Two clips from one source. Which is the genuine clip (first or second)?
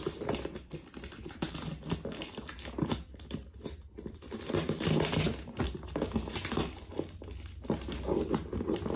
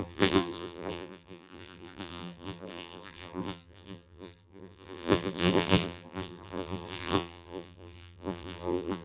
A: first